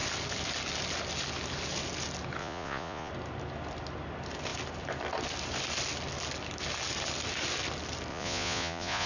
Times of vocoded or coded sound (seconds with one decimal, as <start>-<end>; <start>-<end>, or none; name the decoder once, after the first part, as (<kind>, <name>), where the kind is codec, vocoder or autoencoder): 2.4-3.1 (vocoder, Vocos); 8.1-9.1